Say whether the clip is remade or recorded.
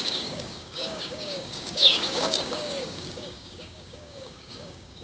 remade